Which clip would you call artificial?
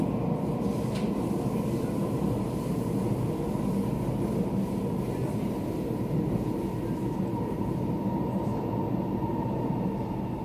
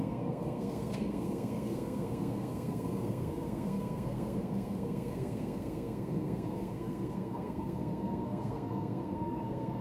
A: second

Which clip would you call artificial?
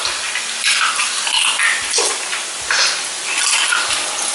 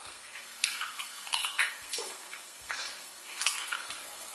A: second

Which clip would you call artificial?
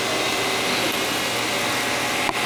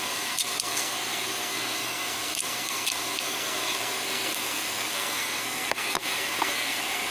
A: second